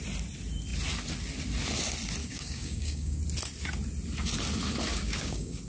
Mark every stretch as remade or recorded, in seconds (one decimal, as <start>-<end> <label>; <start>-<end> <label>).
0.0-2.2 recorded; 2.2-3.2 remade; 3.2-4.9 recorded; 4.9-5.7 remade